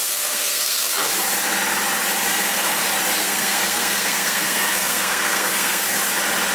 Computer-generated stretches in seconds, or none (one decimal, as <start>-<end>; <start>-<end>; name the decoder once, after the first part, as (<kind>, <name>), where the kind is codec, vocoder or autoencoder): 0.0-1.1 (codec, SNAC); 2.3-2.8; 3.2-6.0